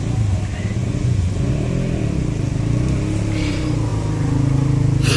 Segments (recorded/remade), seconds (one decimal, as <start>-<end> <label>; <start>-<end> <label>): 0.0-0.8 recorded; 0.8-1.5 remade; 1.5-5.2 recorded